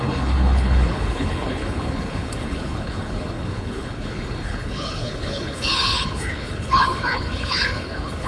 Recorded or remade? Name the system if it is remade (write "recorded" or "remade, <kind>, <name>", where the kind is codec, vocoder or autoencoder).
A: remade, codec, HILCodec